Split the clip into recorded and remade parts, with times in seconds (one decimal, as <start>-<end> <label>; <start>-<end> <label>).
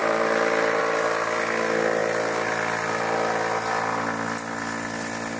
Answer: 0.0-0.8 remade; 0.8-2.0 recorded; 2.0-3.0 remade; 3.0-5.4 recorded